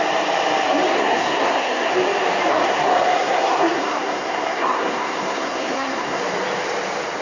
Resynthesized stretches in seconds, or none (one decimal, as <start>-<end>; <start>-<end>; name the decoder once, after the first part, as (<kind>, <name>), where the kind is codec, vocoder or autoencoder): 0.9-1.9 (codec, SNAC); 2.5-6.2